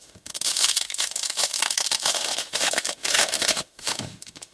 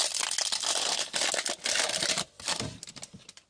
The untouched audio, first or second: second